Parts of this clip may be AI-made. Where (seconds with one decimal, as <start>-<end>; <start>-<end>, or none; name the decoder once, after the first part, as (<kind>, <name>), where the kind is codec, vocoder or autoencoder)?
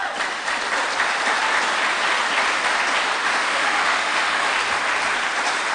3.2-4.5 (autoencoder, DAC-VAE)